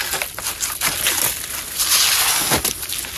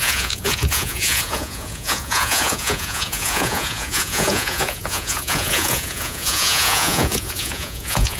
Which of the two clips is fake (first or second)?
second